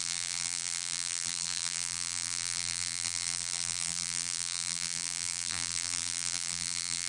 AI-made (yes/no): yes